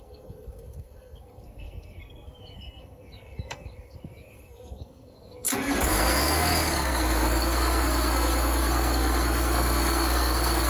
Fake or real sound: fake